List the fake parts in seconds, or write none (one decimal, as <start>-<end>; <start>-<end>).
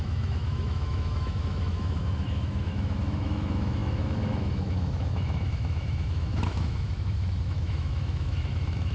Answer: 0.0-8.9